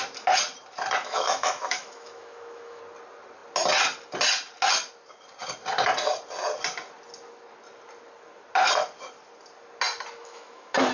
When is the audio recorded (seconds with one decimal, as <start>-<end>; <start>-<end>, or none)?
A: 0.0-1.0; 2.8-10.2